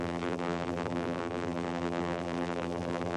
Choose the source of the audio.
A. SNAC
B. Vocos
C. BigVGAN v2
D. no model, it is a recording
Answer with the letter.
C